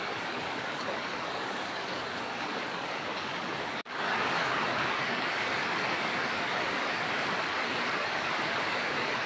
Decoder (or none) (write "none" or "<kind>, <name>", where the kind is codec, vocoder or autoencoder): codec, DAC